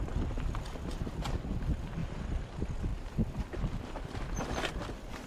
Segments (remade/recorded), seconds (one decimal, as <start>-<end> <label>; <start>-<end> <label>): 0.0-2.0 recorded; 2.0-2.5 remade; 2.5-2.9 recorded; 2.9-4.7 remade; 4.7-5.3 recorded